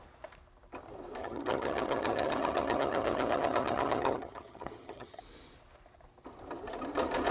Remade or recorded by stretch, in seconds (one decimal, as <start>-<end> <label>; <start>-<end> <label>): 0.0-1.2 recorded; 1.2-5.2 remade; 5.2-7.3 recorded